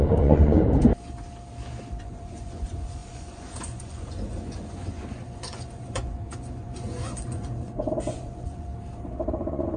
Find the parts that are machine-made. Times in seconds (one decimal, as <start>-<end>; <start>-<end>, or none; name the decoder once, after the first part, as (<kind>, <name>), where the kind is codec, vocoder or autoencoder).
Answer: 0.0-0.6 (vocoder, Vocos); 2.0-8.7; 9.3-9.8